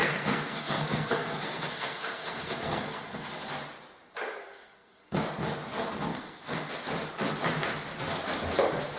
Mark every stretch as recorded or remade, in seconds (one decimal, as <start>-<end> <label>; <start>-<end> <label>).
0.0-3.4 remade; 3.4-4.4 recorded; 4.4-5.2 remade; 5.2-6.1 recorded; 6.1-6.7 remade; 6.7-9.0 recorded